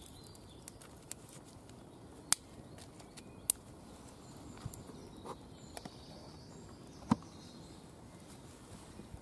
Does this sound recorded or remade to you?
recorded